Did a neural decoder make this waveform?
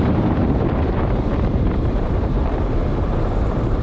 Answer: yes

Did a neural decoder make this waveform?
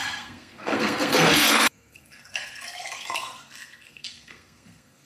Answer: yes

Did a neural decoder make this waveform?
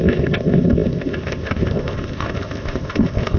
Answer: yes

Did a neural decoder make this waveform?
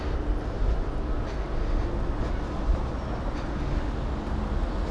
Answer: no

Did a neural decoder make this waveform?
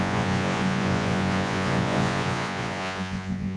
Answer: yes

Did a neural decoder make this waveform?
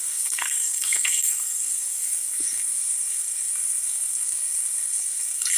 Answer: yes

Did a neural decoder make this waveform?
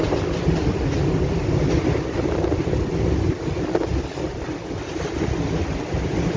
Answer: no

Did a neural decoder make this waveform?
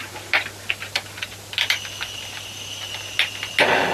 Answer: no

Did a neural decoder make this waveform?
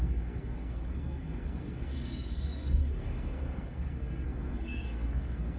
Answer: yes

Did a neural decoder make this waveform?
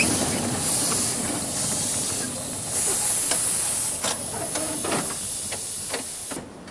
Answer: no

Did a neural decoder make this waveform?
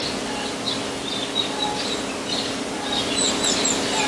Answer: no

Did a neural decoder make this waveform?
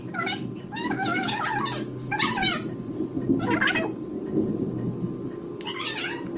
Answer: no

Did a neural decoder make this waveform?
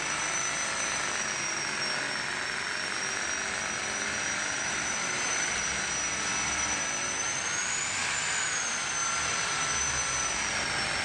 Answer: no